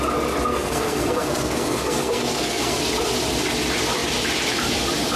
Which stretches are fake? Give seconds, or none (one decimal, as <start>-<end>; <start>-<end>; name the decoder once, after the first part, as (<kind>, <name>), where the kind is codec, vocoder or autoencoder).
0.5-2.8 (codec, SNAC)